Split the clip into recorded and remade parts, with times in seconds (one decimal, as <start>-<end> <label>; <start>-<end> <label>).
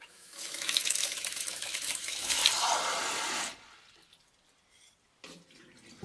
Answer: 0.0-2.4 remade; 2.4-6.0 recorded